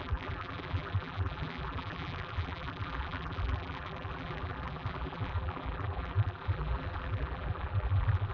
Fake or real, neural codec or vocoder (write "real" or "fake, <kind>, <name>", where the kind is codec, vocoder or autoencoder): fake, vocoder, BigVGAN v2